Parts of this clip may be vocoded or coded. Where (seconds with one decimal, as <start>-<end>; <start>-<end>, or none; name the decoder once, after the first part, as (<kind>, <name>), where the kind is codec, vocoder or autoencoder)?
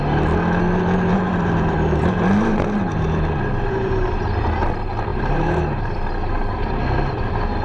1.1-4.4 (vocoder, BigVGAN v2); 5.1-6.6